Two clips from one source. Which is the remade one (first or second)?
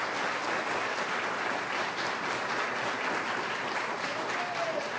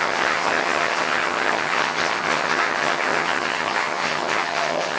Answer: second